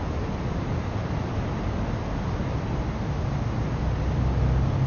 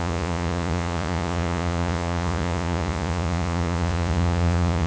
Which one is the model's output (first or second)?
second